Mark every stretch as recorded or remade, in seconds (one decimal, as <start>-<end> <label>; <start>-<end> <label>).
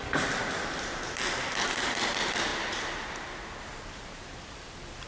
0.0-5.1 recorded